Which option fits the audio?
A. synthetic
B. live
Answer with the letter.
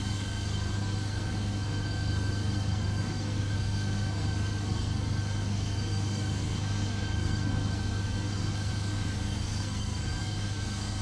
A